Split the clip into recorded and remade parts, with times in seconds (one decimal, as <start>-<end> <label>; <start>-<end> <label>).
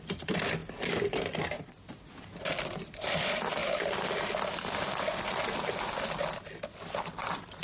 0.0-7.6 recorded